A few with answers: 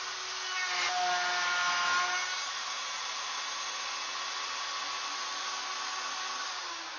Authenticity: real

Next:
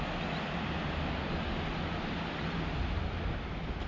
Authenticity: real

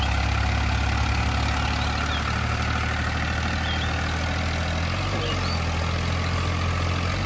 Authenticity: real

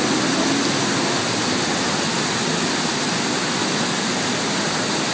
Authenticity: real